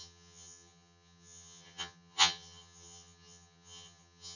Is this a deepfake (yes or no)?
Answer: yes